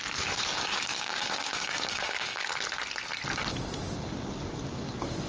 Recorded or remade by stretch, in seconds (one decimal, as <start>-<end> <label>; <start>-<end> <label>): 0.0-0.5 recorded; 0.5-2.5 remade; 2.5-5.3 recorded